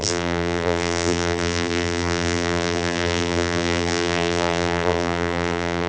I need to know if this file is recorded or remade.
remade